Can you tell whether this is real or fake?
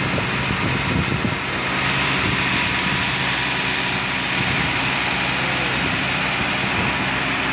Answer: real